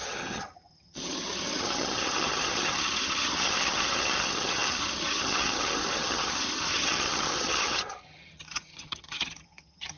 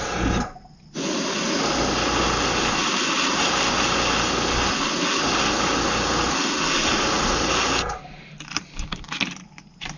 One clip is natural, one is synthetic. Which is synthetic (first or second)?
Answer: first